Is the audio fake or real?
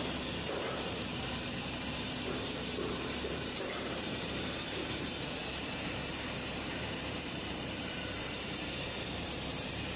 fake